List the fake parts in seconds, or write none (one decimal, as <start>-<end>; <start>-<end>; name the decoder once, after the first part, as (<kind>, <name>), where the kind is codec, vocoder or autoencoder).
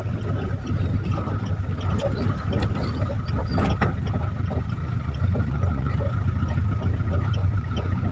4.8-6.0 (vocoder, Vocos); 7.4-8.1